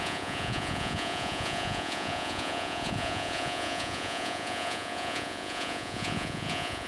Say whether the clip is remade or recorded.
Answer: remade